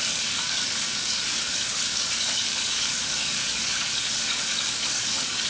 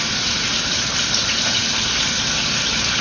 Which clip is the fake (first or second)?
first